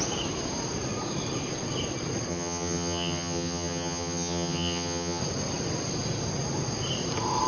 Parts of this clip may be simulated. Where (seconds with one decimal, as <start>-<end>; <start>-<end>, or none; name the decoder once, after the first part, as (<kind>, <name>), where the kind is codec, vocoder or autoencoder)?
2.3-5.2 (vocoder, HiFi-GAN)